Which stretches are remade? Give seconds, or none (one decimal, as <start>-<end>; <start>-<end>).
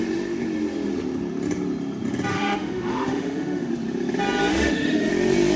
2.3-3.7; 4.5-5.1